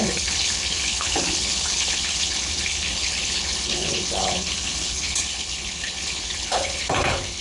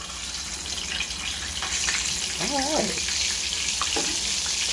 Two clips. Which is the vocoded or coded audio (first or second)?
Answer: first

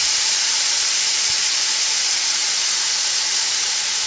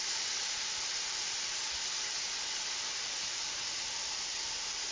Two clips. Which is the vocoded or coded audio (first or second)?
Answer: first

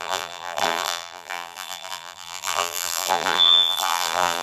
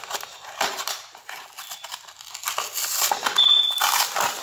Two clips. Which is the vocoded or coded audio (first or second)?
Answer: first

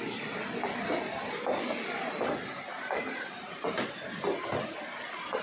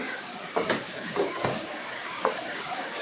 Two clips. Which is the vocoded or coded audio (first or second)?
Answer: second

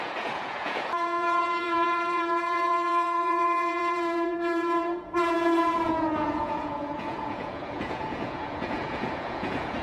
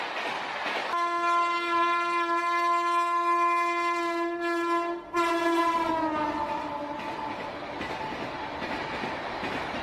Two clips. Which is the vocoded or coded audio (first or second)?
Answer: first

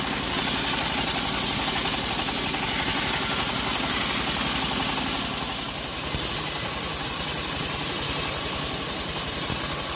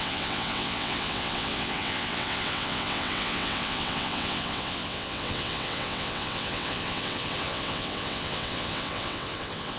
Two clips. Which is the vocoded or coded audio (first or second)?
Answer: second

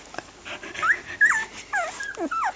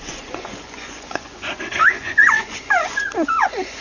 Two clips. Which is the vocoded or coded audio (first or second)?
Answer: second